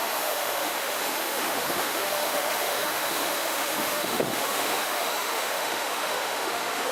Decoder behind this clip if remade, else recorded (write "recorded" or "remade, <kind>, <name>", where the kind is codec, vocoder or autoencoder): remade, autoencoder, DAC-VAE